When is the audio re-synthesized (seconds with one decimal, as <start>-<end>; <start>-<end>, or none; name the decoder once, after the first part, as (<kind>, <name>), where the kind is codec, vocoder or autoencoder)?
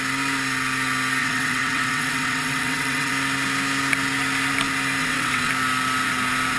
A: 1.2-3.1 (vocoder, WaveNeXt); 5.0-5.5